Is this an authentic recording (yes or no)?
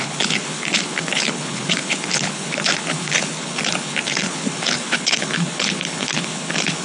no